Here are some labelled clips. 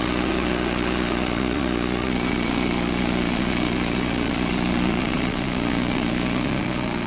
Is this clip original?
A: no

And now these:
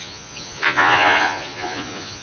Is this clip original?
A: no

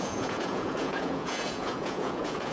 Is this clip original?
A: no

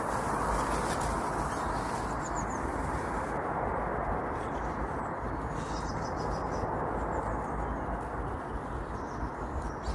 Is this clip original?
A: yes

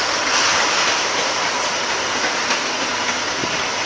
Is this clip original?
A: yes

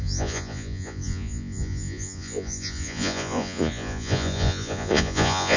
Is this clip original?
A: no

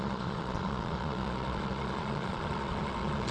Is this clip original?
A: no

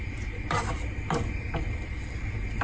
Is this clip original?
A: yes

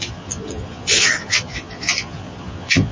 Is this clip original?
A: no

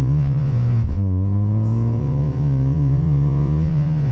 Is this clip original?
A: no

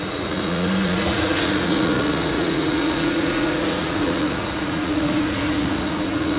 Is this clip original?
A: no